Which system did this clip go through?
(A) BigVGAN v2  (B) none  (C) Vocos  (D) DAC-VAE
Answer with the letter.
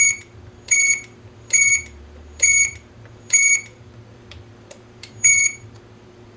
A